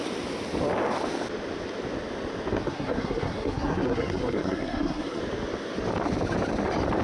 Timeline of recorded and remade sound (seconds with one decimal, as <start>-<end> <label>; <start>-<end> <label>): 0.0-2.6 recorded; 2.6-5.2 remade; 5.2-7.0 recorded